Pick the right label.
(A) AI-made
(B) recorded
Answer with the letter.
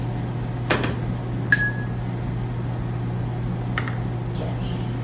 B